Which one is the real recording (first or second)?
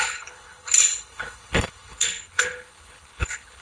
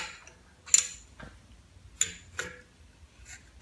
second